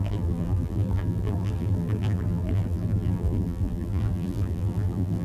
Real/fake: fake